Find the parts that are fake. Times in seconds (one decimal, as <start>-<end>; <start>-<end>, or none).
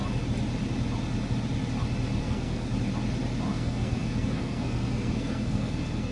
2.2-2.7; 3.5-6.1